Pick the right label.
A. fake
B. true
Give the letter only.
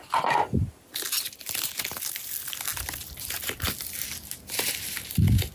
B